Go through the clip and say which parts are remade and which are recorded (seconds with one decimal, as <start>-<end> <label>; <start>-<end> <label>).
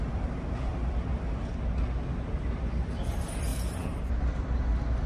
0.0-3.5 recorded; 3.5-4.6 remade; 4.6-5.1 recorded